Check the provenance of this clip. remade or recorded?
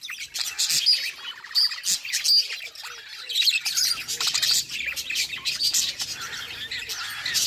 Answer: recorded